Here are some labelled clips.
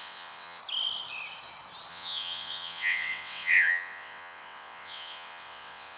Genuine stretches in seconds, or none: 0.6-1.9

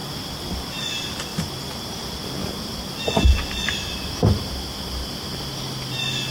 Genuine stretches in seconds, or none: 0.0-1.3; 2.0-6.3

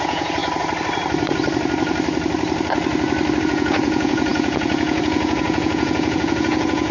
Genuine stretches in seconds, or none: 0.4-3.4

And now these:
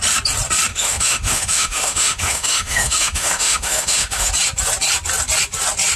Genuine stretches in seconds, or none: 0.0-0.7; 4.3-6.0

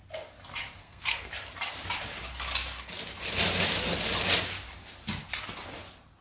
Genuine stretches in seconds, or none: 0.0-0.8; 1.3-6.2

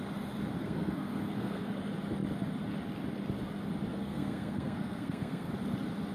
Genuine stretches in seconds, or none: 0.0-0.6; 1.8-3.9; 5.5-6.1

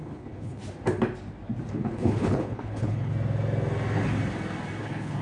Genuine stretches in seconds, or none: 0.6-1.7; 3.1-4.8